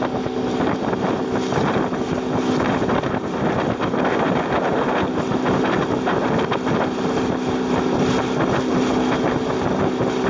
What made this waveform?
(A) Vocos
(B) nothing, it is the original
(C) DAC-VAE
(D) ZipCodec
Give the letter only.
B